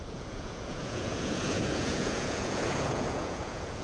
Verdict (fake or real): fake